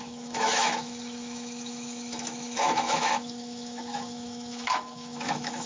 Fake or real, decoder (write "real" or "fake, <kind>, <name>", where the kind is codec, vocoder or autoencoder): fake, autoencoder, DAC-VAE